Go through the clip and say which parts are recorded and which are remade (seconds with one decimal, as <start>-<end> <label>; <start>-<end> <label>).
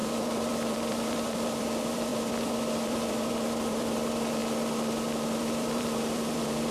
0.0-4.4 remade; 4.4-5.3 recorded; 5.3-6.7 remade